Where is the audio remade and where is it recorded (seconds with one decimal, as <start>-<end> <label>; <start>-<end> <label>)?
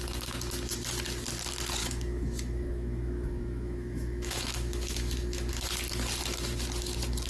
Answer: 0.0-1.8 recorded; 1.8-5.5 remade; 5.5-7.3 recorded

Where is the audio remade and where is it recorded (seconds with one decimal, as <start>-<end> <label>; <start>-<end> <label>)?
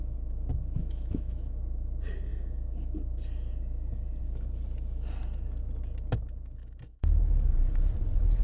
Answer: 0.0-0.8 recorded; 0.8-1.6 remade; 1.6-6.6 recorded; 6.6-7.2 remade; 7.2-8.4 recorded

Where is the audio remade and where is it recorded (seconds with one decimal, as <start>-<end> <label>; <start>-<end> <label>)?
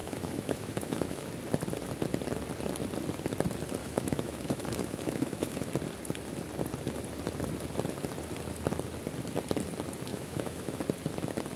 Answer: 0.0-1.3 remade; 1.3-3.8 recorded; 3.8-5.7 remade; 5.7-10.1 recorded; 10.1-10.8 remade; 10.8-11.6 recorded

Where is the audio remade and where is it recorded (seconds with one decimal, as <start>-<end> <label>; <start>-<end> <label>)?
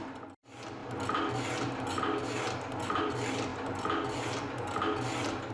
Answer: 0.0-5.5 recorded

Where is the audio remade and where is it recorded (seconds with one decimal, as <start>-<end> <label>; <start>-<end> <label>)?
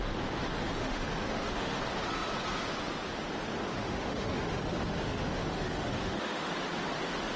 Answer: 0.0-0.8 recorded; 0.8-1.8 remade; 1.8-3.7 recorded; 3.7-6.5 remade; 6.5-7.4 recorded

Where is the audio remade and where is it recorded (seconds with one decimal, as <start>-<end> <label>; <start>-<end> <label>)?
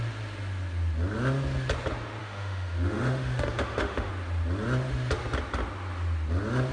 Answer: 0.0-2.2 recorded; 2.2-4.1 remade; 4.1-6.7 recorded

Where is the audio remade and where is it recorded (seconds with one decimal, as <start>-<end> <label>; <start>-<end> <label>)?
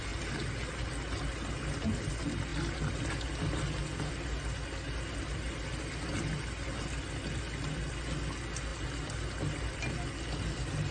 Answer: 0.0-10.9 recorded